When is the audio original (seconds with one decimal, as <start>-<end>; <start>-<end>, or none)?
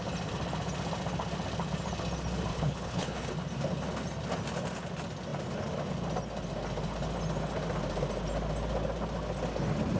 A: 0.0-2.5; 3.3-10.0